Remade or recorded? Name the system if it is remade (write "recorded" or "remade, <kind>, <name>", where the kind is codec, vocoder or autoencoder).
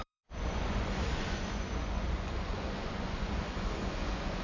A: remade, vocoder, Vocos